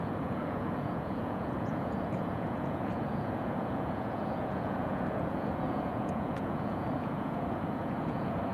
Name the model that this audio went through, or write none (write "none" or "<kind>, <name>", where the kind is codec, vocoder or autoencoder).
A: vocoder, Vocos